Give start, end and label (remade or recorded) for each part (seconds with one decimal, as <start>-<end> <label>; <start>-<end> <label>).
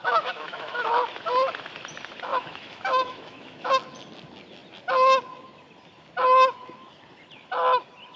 0.0-0.9 remade; 0.9-2.3 recorded; 2.3-3.7 remade; 3.7-8.2 recorded